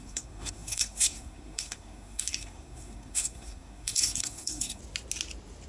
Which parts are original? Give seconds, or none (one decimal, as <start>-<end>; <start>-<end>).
4.8-5.7